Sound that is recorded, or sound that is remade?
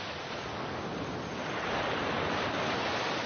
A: recorded